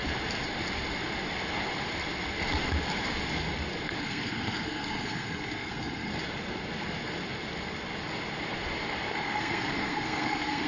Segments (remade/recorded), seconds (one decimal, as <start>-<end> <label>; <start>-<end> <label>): 0.0-4.0 recorded; 4.0-6.1 remade; 6.1-9.1 recorded; 9.1-10.7 remade